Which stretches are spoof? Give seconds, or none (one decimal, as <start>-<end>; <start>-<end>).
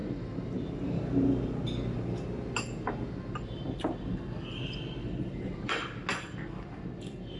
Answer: 0.0-1.0; 5.0-5.7